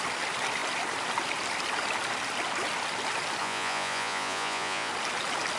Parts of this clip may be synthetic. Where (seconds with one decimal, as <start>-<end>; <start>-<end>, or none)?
3.4-4.9